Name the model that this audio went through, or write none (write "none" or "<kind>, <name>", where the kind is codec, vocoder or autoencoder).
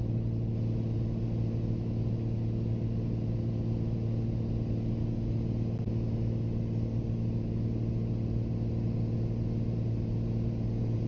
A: none